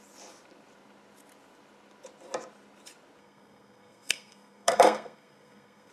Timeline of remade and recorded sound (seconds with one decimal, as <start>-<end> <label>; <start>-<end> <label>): 0.0-3.2 recorded; 3.2-5.9 remade